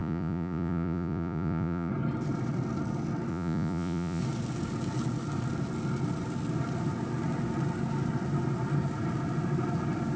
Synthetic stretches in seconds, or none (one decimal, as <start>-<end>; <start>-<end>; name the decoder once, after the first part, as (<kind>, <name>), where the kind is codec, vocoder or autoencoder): 0.0-1.9 (vocoder, Vocos); 3.3-4.2